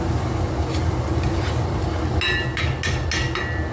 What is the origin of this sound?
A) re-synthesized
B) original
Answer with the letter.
B